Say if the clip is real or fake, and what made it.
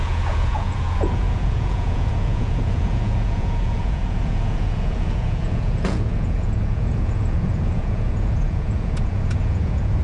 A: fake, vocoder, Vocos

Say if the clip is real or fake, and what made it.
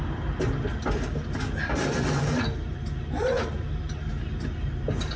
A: real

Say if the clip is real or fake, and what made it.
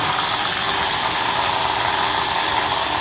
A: real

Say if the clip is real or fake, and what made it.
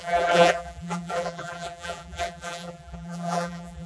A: fake, vocoder, BigVGAN v2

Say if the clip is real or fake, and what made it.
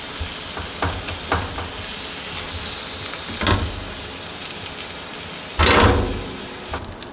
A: real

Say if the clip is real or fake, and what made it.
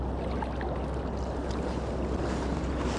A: real